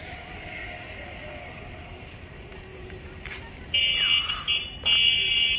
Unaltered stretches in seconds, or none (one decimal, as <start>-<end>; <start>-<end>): 0.0-2.7; 3.8-5.6

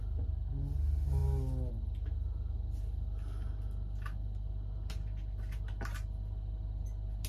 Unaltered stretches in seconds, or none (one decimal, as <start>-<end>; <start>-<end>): 0.0-7.3

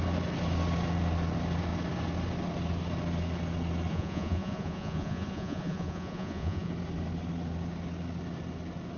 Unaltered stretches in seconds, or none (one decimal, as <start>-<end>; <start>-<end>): 0.0-3.9; 6.7-9.0